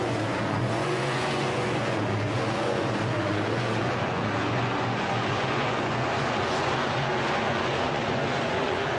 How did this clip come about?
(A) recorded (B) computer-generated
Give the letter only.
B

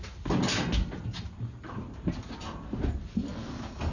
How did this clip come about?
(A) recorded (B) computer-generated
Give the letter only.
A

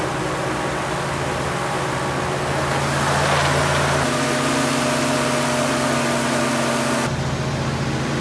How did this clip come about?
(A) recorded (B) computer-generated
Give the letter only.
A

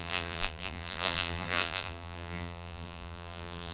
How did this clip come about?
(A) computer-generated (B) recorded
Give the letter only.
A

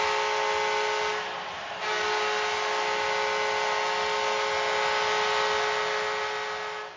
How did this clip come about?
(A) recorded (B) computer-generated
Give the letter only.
A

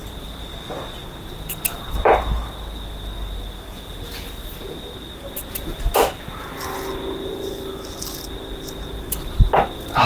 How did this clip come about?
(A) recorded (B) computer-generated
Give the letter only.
A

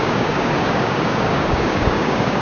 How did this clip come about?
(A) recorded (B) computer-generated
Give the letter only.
B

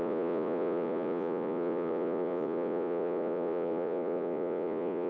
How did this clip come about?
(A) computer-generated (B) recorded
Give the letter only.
A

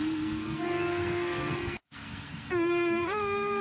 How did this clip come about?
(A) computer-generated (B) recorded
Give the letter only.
A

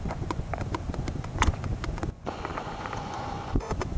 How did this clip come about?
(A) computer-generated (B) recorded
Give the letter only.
A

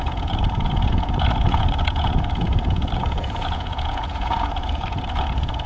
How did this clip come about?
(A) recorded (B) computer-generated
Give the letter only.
B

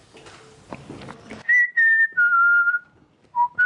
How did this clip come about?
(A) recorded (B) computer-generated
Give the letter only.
A